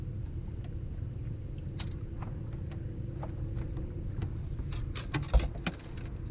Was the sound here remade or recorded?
recorded